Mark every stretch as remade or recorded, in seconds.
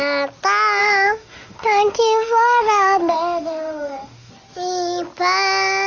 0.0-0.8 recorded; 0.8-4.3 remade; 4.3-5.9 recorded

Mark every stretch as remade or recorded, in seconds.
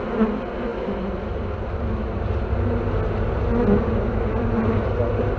0.0-5.4 recorded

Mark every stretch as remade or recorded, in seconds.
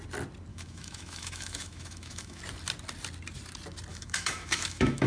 0.0-0.5 recorded; 0.5-2.4 remade; 2.4-3.9 recorded; 3.9-5.1 remade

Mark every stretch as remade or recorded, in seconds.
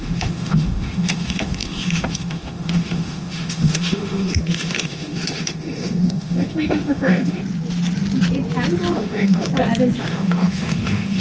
0.0-7.4 remade; 7.4-8.9 recorded; 8.9-9.5 remade; 9.5-10.0 recorded; 10.0-11.2 remade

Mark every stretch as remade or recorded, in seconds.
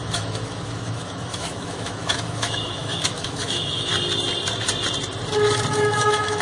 0.0-3.9 remade; 3.9-5.7 recorded; 5.7-6.4 remade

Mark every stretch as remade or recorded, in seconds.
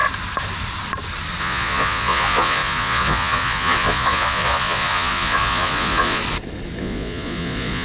0.0-1.4 recorded; 1.4-6.2 remade; 6.2-6.8 recorded; 6.8-7.8 remade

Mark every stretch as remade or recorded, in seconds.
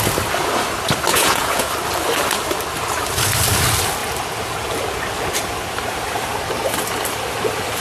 0.0-1.1 recorded; 1.1-1.7 remade; 1.7-7.8 recorded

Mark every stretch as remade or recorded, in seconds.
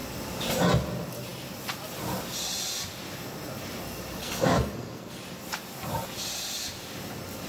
0.0-4.2 recorded; 4.2-5.2 remade; 5.2-7.5 recorded